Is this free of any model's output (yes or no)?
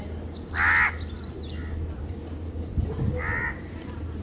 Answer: yes